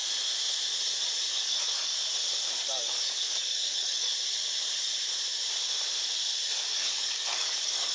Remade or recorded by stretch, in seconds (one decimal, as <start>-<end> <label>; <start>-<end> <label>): 0.0-1.3 recorded; 1.3-1.9 remade; 1.9-2.6 recorded; 2.6-4.1 remade; 4.1-6.7 recorded; 6.7-7.9 remade